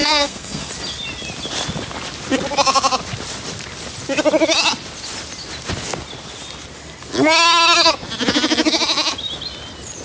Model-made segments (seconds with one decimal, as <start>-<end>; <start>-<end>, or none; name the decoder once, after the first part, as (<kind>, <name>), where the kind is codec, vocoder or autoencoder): 0.0-0.7 (codec, SNAC)